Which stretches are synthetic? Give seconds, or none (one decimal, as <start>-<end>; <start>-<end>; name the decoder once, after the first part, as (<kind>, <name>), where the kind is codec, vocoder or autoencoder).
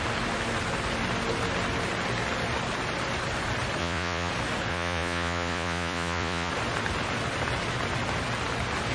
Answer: 3.8-4.3 (vocoder, Vocos); 4.7-6.5